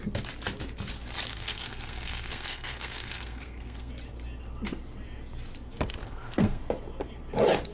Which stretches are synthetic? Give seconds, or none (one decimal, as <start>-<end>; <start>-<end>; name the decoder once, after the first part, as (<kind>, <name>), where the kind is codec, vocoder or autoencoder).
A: 1.3-3.9 (codec, SNAC); 6.0-6.6